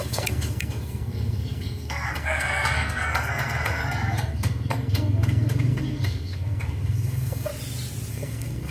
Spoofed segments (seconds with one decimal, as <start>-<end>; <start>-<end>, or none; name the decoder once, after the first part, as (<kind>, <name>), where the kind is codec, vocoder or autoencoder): 0.0-7.5 (codec, SNAC); 8.1-8.7